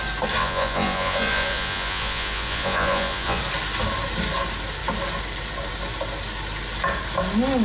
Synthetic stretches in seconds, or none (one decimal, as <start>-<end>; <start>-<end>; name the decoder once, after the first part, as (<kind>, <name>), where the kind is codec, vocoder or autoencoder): 0.4-3.4 (vocoder, Vocos)